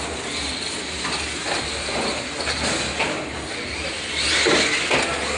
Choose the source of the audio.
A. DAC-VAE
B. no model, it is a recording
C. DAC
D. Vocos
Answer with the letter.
B